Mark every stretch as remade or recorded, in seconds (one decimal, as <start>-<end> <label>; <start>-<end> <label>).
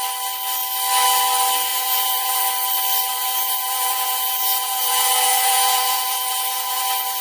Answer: 0.0-1.7 recorded; 1.7-2.4 remade; 2.4-3.2 recorded; 3.2-6.8 remade; 6.8-7.2 recorded